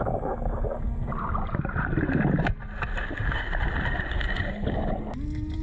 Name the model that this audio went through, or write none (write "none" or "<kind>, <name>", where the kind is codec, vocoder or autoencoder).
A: none